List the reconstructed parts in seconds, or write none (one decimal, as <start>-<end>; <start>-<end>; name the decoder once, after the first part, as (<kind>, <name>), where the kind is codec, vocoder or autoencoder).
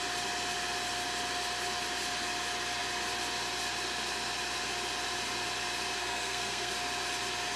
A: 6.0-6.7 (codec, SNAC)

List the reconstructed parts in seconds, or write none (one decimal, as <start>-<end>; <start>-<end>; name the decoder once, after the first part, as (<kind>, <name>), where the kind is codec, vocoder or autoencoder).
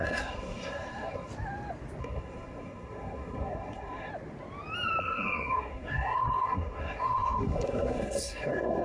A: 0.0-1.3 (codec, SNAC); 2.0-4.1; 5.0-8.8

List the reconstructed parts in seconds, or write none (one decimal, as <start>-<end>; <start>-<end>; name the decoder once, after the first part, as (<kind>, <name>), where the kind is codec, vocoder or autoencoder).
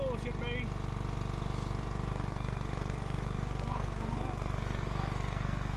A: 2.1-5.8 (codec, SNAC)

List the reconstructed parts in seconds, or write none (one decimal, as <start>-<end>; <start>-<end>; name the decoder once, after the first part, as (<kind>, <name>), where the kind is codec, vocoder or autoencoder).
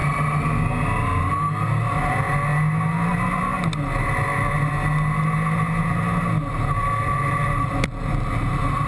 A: none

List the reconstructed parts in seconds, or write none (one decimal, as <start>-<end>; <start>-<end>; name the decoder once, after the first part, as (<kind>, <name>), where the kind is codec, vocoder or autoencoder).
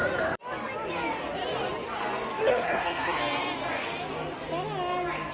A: 2.5-3.2 (codec, SNAC)